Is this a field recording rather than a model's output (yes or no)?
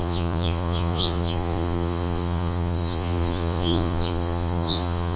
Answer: no